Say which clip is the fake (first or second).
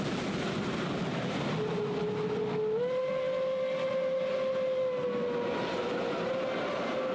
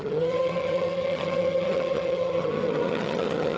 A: second